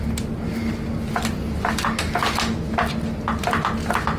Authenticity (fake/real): real